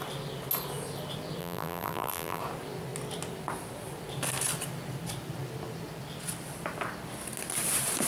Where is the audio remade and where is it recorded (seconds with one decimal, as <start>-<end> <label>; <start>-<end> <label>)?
0.0-1.4 recorded; 1.4-2.4 remade; 2.4-8.1 recorded